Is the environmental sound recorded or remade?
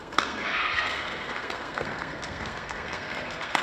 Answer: remade